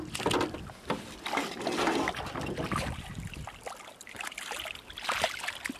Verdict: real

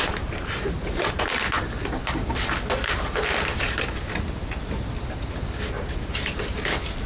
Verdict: real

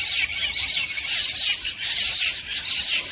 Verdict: real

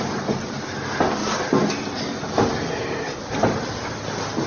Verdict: real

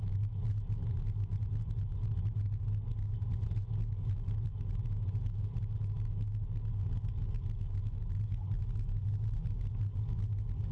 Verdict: real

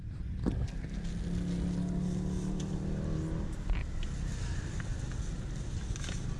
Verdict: real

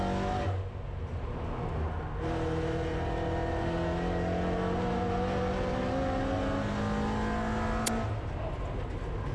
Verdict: real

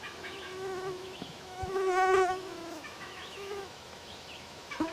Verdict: fake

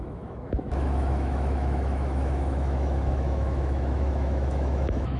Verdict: fake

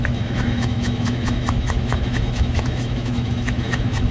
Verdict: fake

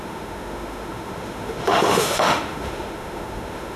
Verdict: fake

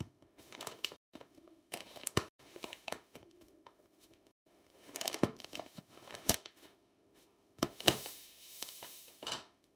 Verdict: fake